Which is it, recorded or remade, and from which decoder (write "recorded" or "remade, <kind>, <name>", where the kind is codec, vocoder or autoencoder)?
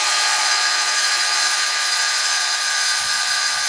remade, vocoder, Vocos